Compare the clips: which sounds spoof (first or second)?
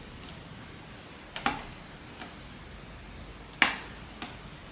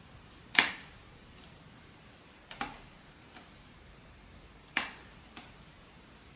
second